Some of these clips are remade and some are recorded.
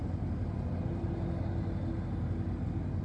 recorded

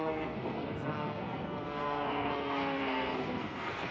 remade